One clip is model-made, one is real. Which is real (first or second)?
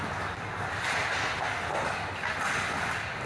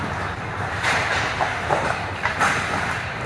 first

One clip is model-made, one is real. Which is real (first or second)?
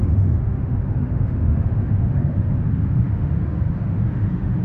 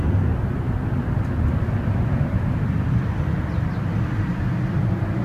second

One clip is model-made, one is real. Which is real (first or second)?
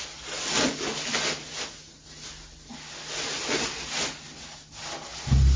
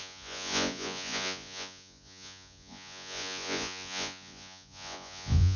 first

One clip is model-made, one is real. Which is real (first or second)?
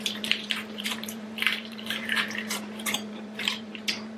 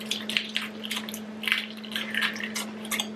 second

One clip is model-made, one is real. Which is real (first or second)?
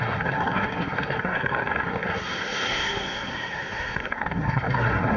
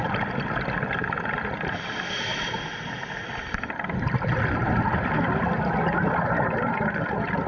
second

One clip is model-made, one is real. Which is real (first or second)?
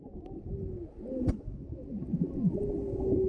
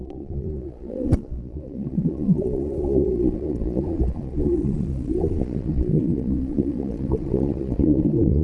first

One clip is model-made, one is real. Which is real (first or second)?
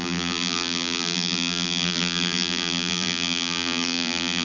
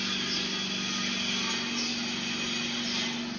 second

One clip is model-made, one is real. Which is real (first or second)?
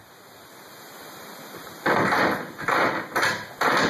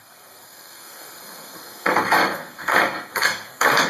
first